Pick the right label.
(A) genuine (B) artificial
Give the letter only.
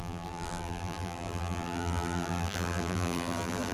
B